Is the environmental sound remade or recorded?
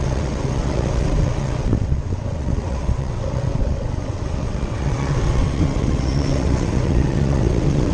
remade